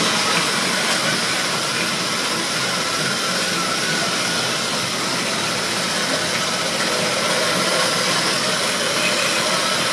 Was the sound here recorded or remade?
recorded